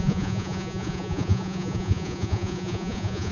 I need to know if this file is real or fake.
fake